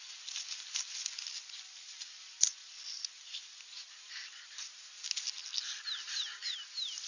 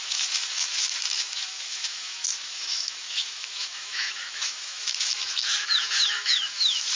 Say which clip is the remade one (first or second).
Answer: second